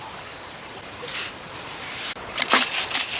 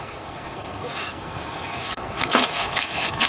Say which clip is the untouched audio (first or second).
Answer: first